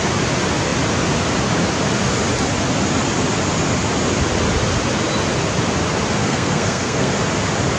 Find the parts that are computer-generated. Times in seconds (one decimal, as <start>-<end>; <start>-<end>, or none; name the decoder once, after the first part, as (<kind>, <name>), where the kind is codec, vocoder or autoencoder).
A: 6.2-7.1 (codec, SNAC)